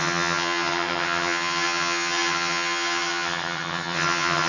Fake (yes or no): yes